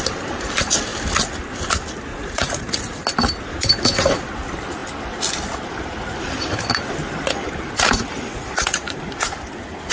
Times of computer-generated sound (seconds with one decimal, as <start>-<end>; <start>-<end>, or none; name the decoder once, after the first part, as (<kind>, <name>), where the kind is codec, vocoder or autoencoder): 2.1-2.7 (vocoder, Vocos); 8.3-9.0